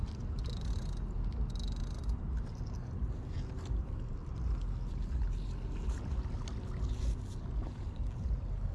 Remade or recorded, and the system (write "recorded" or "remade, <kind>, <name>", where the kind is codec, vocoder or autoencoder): recorded